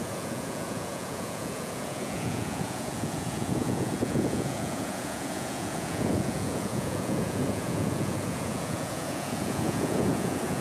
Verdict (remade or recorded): remade